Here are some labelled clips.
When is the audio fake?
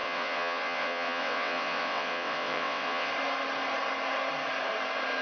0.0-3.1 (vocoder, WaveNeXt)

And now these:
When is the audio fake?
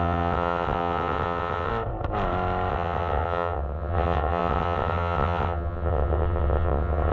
0.0-1.7 (vocoder, WaveNeXt); 2.7-7.1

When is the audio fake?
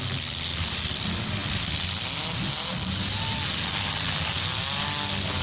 none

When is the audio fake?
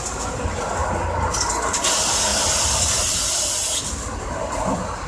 none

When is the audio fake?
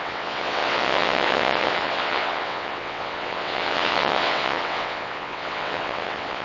0.0-6.4 (vocoder, WaveNeXt)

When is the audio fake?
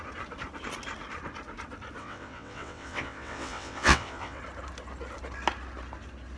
2.0-4.4 (vocoder, WaveNeXt)